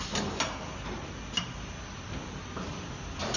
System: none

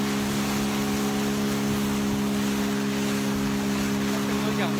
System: none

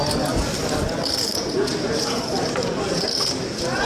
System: none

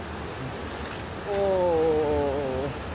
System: none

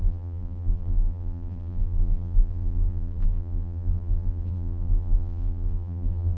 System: vocoder, BigVGAN v2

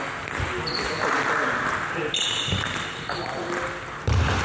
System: none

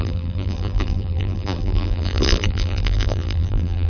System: vocoder, BigVGAN v2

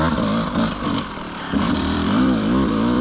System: vocoder, BigVGAN v2